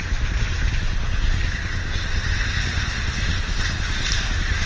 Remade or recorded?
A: recorded